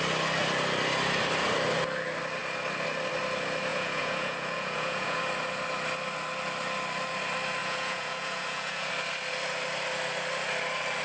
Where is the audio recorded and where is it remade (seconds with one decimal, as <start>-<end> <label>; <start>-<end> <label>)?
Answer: 0.0-3.7 recorded; 3.7-5.2 remade; 5.2-7.6 recorded; 7.6-8.9 remade; 8.9-11.0 recorded